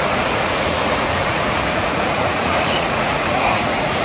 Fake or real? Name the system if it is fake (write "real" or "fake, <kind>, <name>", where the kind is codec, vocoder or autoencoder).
fake, vocoder, Vocos